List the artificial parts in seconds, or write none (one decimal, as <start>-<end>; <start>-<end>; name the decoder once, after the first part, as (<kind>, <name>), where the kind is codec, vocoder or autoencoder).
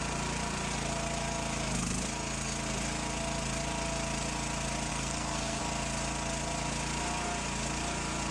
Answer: 4.9-5.6 (codec, SNAC)